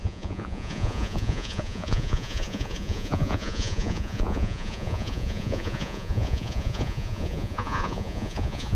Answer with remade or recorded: remade